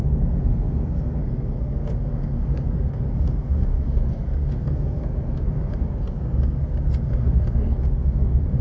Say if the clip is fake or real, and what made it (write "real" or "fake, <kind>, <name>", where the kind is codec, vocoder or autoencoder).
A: fake, codec, SNAC